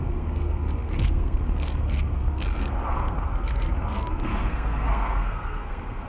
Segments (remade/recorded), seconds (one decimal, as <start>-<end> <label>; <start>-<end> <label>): 0.0-6.1 remade

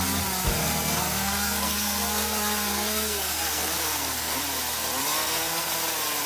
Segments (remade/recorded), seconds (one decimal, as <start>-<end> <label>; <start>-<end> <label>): 0.0-0.6 recorded; 0.6-4.4 remade; 4.4-5.0 recorded; 5.0-5.7 remade; 5.7-6.3 recorded

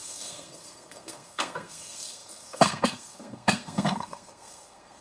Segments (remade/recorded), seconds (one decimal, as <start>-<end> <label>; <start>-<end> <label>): 0.0-5.0 remade

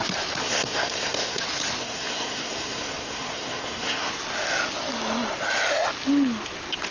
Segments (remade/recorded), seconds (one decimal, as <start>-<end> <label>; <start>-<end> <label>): 0.0-0.4 recorded; 0.4-1.4 remade; 1.4-1.8 recorded; 1.8-4.1 remade; 4.1-6.9 recorded

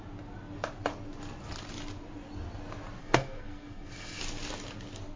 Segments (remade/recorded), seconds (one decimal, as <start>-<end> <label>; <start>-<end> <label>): 0.0-3.0 recorded; 3.0-4.2 remade; 4.2-5.2 recorded

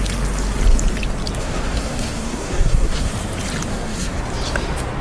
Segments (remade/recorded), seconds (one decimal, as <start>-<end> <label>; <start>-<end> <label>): 0.0-1.4 recorded; 1.4-3.1 remade; 3.1-3.7 recorded; 3.7-4.2 remade; 4.2-5.0 recorded